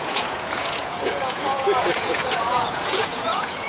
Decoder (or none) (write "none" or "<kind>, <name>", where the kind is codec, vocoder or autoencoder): vocoder, Vocos